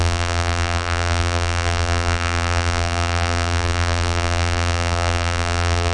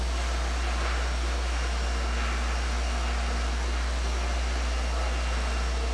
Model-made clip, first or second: first